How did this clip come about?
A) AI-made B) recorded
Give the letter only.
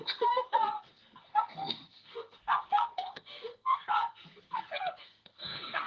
A